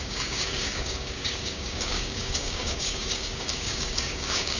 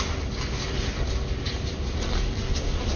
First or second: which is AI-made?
first